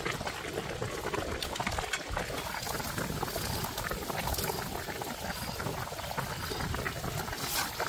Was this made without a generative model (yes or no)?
yes